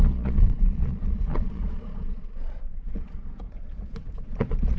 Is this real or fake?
fake